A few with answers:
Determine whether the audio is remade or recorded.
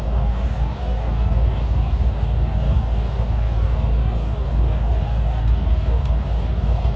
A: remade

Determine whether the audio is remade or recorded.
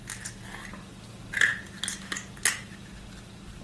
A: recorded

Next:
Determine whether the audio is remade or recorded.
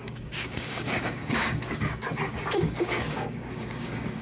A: remade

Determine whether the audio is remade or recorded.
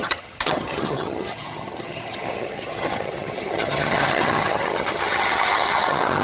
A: remade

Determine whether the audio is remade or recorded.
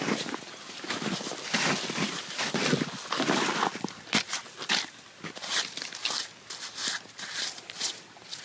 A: recorded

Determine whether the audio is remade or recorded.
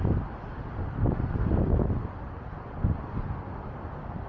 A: recorded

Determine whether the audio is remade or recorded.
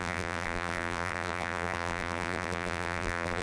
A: remade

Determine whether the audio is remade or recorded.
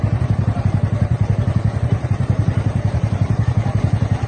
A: remade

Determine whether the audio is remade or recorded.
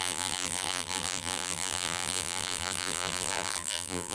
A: remade